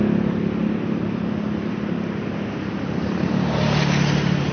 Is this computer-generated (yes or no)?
no